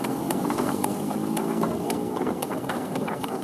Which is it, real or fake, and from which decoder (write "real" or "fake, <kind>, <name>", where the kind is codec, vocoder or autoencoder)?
fake, codec, SNAC